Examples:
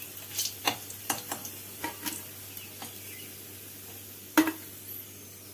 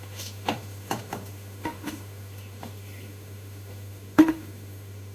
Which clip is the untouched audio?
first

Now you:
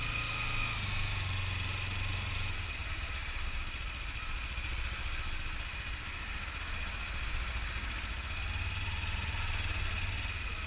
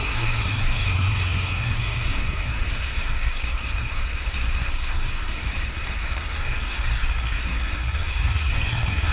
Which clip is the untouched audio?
first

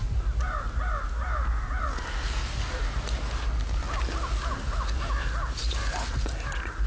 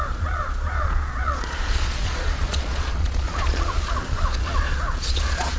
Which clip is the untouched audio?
first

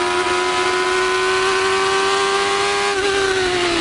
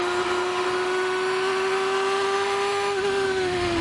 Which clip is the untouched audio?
first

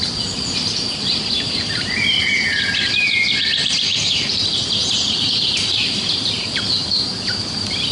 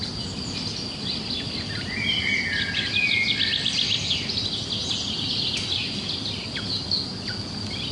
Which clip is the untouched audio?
second